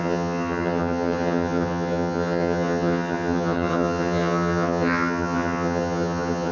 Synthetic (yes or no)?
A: yes